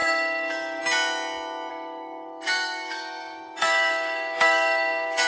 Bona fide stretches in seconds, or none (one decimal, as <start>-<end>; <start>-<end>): 0.8-1.7